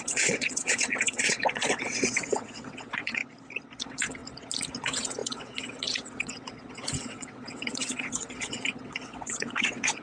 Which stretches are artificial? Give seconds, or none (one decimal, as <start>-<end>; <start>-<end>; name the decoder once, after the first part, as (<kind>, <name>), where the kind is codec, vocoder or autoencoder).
0.0-3.2 (vocoder, WaveNeXt); 3.8-4.2; 4.8-10.0